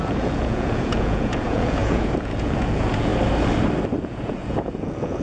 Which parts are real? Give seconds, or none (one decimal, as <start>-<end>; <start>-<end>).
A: 3.1-4.0